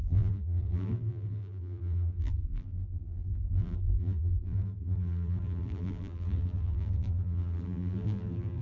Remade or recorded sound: remade